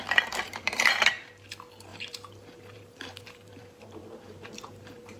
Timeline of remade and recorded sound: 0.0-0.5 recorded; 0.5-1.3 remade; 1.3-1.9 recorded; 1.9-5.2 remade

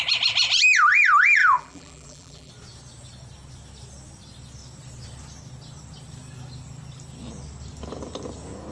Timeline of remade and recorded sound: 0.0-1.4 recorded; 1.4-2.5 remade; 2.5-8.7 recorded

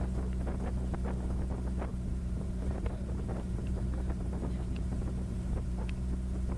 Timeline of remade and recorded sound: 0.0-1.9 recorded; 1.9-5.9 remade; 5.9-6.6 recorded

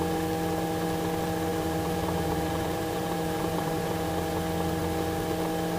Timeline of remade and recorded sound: 0.0-1.5 recorded; 1.5-4.1 remade; 4.1-5.8 recorded

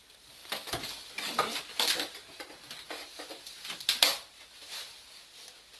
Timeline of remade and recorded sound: 0.0-0.4 recorded; 0.4-2.9 remade; 2.9-5.8 recorded

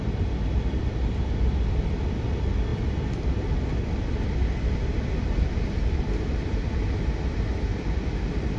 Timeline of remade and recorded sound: 0.0-7.7 recorded; 7.7-8.6 remade

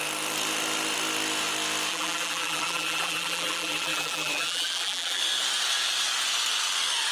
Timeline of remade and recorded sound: 0.0-1.9 recorded; 1.9-5.2 remade; 5.2-7.1 recorded

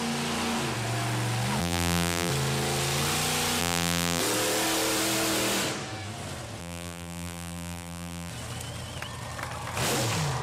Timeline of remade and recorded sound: 0.0-1.6 recorded; 1.6-2.3 remade; 2.3-3.6 recorded; 3.6-4.2 remade; 4.2-6.6 recorded; 6.6-8.3 remade; 8.3-10.4 recorded